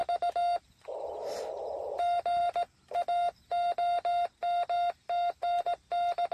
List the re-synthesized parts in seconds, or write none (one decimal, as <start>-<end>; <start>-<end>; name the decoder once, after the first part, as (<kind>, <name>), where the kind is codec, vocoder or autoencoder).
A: none